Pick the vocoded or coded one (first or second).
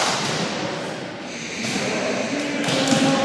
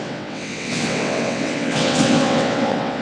second